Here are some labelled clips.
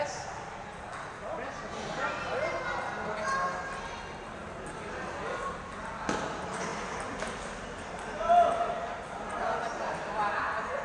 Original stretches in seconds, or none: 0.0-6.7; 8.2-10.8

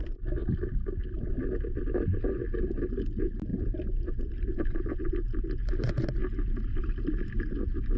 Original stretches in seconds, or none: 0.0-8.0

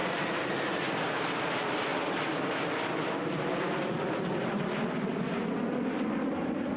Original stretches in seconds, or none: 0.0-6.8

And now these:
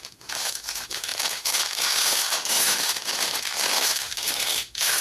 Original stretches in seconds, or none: none